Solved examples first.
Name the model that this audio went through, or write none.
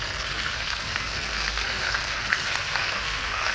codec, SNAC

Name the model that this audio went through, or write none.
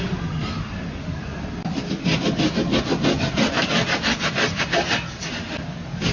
none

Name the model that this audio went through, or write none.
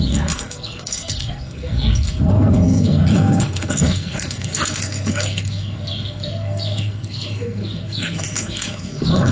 codec, SNAC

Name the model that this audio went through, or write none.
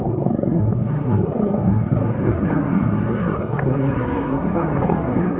codec, SNAC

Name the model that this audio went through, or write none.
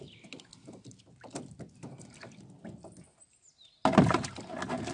none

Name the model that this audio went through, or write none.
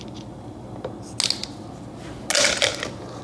none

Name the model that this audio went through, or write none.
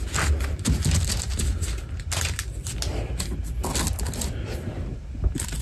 none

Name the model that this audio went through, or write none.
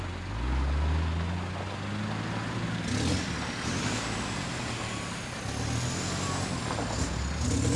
none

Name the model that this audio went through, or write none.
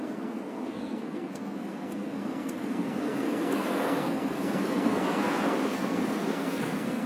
codec, SNAC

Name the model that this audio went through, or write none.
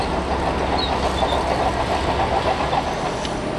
none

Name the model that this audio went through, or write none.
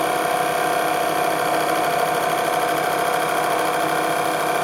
none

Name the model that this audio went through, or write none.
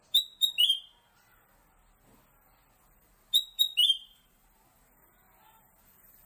none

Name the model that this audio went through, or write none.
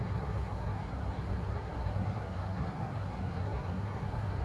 codec, SNAC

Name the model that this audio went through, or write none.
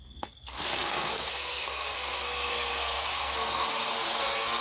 codec, SNAC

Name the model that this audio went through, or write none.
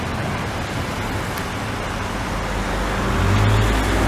none